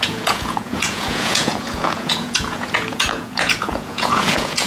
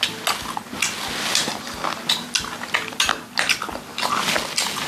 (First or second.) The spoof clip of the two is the first